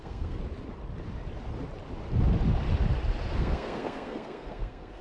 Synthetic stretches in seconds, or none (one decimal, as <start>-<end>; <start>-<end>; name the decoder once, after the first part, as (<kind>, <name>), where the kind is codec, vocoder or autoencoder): 0.0-0.4 (codec, SNAC); 3.3-5.0